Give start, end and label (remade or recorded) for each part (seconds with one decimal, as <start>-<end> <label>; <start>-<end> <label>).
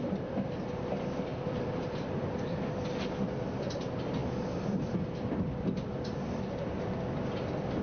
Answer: 0.0-1.3 recorded; 1.3-2.7 remade; 2.7-7.8 recorded